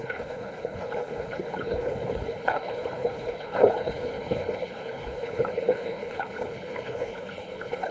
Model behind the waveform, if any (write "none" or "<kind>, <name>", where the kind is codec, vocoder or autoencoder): codec, HILCodec